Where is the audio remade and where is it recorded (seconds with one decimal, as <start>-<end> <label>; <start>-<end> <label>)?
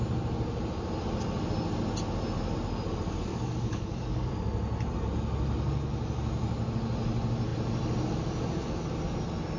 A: 0.0-3.3 recorded; 3.3-4.3 remade; 4.3-9.6 recorded